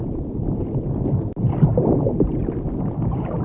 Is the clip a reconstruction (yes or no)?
no